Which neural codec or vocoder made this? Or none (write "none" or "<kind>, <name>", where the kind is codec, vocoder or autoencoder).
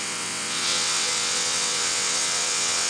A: vocoder, WaveNeXt